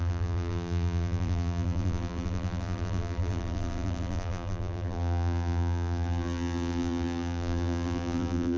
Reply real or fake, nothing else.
fake